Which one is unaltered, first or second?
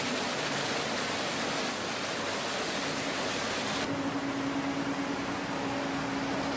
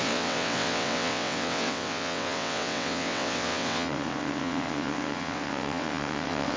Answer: first